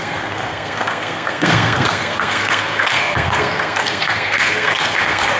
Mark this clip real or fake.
fake